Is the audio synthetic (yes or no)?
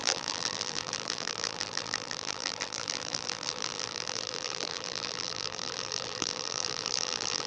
yes